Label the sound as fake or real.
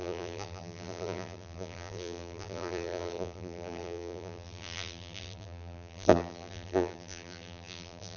fake